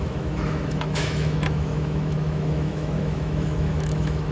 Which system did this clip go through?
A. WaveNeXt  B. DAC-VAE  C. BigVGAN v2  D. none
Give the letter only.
B